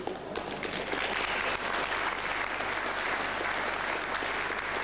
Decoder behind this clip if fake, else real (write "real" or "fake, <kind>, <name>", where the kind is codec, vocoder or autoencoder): real